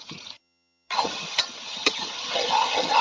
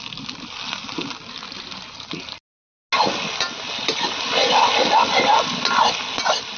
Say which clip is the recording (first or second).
second